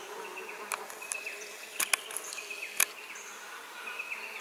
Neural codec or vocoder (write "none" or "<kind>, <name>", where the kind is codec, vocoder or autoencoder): none